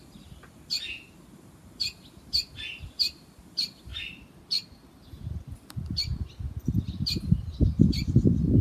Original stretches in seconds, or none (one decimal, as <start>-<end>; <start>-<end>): 0.0-8.6